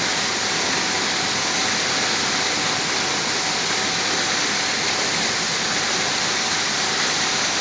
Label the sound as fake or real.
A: real